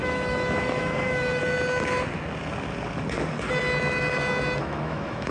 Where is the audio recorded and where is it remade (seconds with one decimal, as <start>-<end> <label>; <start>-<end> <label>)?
0.0-1.4 remade; 1.4-4.6 recorded; 4.6-5.3 remade